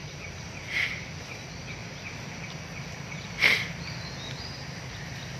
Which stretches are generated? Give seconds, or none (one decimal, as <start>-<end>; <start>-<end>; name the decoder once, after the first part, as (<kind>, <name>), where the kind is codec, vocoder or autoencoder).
none

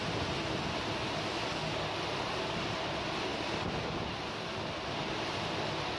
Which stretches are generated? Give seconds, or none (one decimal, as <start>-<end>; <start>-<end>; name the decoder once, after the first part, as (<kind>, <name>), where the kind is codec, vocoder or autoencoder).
none

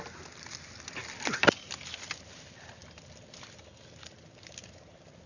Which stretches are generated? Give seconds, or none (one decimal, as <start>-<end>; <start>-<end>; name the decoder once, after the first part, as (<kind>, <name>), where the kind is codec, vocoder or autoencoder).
none

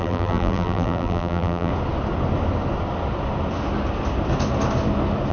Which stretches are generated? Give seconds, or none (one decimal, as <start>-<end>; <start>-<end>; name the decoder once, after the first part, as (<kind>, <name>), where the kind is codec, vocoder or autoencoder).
0.0-1.7 (vocoder, BigVGAN v2)

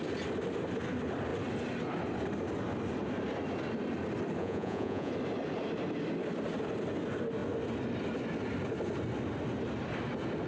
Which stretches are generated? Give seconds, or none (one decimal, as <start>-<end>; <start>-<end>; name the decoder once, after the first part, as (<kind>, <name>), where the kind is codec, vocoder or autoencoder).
4.4-5.1 (vocoder, Vocos)